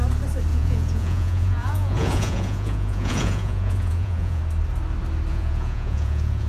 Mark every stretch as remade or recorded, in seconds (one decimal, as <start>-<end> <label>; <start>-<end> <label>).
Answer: 0.0-0.5 recorded; 0.5-4.4 remade; 4.4-5.3 recorded; 5.3-6.5 remade